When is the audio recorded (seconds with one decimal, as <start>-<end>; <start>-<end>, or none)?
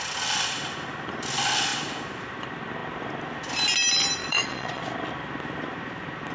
0.0-4.2; 4.8-6.3